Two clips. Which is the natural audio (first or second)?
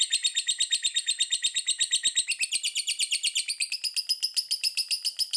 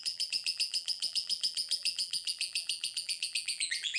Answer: first